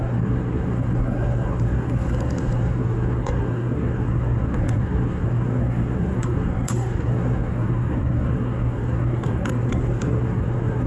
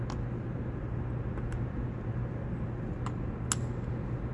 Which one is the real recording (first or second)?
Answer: second